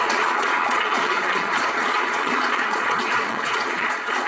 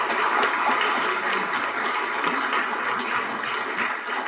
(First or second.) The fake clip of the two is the first